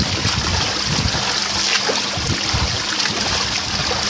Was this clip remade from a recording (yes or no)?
no